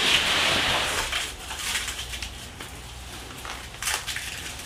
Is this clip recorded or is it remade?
remade